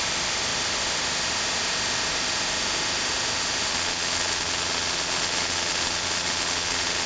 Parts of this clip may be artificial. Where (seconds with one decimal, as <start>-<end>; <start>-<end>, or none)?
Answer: 3.7-7.1